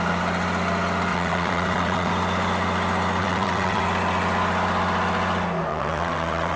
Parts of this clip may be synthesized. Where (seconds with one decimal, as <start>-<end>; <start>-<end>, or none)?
1.1-2.1; 3.2-3.8; 5.7-6.6